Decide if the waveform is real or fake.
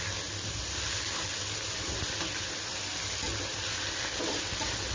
real